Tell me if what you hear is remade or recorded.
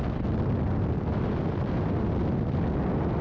recorded